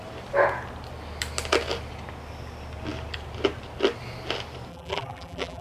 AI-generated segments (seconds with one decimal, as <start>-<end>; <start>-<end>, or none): 4.7-5.6